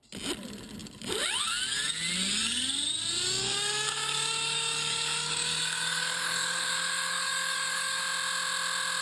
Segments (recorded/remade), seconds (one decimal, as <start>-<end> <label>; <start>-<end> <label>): 0.0-3.4 recorded; 3.4-8.0 remade; 8.0-9.0 recorded